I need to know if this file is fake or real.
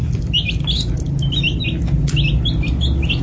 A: real